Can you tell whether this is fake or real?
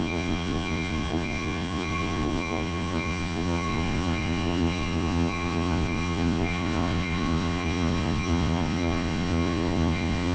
fake